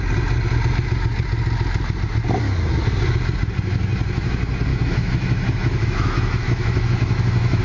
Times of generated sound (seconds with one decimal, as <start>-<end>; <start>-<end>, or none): 4.7-7.6